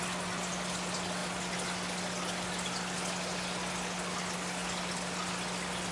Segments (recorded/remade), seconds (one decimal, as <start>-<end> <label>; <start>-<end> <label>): 0.0-5.9 recorded